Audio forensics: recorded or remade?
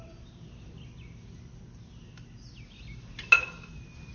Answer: recorded